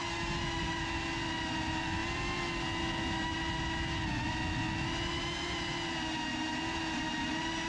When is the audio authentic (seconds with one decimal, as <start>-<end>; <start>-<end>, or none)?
0.0-7.7